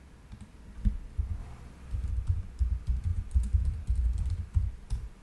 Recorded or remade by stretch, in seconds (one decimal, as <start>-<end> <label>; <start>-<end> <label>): 0.0-1.4 recorded; 1.4-2.1 remade; 2.1-3.1 recorded; 3.1-3.9 remade; 3.9-5.2 recorded